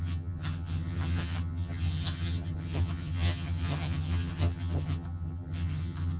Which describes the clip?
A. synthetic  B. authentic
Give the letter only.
A